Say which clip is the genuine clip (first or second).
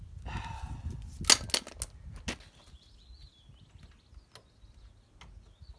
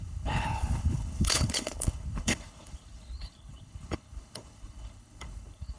first